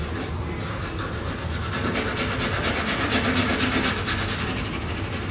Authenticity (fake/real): real